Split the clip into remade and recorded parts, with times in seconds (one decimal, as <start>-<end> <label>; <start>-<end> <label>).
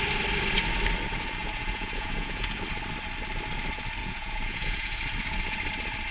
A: 0.0-1.4 recorded; 1.4-2.6 remade; 2.6-4.0 recorded; 4.0-5.0 remade; 5.0-6.1 recorded